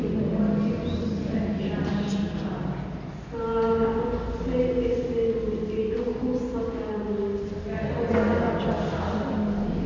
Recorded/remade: recorded